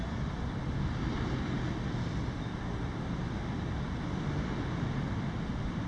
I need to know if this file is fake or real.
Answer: real